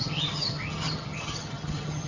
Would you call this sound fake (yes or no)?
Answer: yes